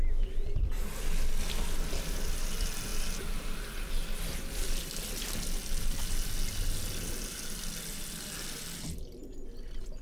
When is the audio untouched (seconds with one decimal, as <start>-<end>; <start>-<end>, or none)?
0.0-10.0